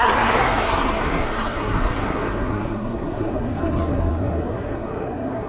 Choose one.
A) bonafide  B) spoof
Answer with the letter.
B